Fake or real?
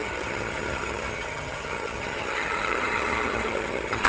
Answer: fake